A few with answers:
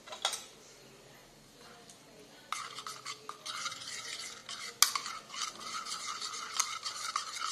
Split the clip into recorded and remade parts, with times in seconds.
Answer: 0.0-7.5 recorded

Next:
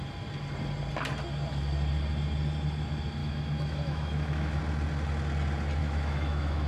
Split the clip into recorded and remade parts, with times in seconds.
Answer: 0.0-3.2 recorded; 3.2-4.6 remade; 4.6-5.8 recorded; 5.8-6.7 remade

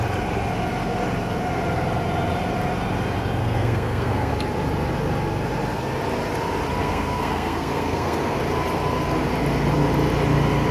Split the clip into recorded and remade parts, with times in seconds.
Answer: 0.0-3.4 recorded; 3.4-4.3 remade; 4.3-6.8 recorded; 6.8-8.4 remade; 8.4-10.7 recorded

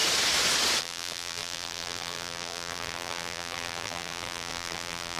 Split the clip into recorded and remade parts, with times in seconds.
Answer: 0.0-0.8 recorded; 0.8-5.2 remade

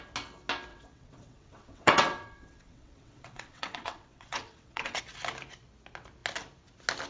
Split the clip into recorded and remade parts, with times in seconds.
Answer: 0.0-0.7 recorded; 0.7-5.0 remade; 5.0-7.1 recorded